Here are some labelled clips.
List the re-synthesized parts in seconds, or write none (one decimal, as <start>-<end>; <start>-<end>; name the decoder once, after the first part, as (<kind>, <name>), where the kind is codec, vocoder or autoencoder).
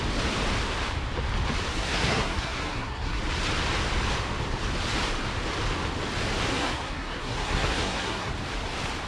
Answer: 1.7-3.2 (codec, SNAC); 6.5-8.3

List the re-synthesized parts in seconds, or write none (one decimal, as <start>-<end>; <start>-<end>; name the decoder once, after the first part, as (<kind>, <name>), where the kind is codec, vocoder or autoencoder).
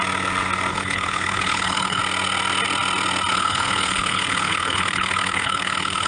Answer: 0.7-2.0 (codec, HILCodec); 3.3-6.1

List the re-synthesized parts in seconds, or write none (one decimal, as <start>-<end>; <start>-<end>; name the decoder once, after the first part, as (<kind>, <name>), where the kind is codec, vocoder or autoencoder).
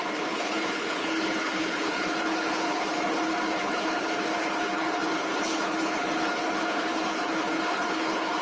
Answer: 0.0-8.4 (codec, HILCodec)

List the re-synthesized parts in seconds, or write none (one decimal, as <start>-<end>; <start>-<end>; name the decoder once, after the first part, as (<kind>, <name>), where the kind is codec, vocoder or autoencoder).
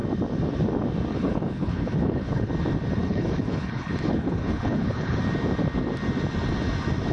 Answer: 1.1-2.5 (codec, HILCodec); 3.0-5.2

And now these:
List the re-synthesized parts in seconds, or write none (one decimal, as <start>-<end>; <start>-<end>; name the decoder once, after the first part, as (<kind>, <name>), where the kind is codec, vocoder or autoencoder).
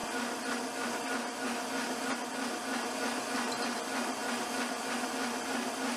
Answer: none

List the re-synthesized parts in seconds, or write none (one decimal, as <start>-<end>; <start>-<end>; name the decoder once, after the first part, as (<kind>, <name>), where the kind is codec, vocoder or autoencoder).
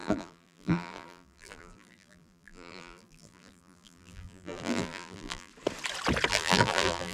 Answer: 0.0-5.5 (vocoder, BigVGAN v2); 6.3-7.1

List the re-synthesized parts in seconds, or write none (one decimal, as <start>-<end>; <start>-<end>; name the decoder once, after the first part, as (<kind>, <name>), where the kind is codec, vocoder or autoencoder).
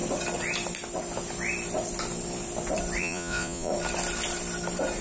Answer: 3.0-3.7 (vocoder, Vocos)